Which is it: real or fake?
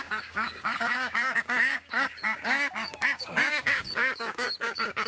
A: fake